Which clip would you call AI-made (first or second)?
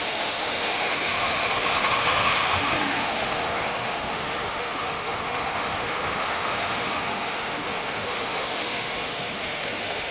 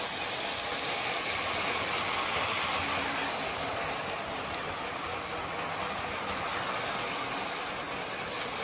first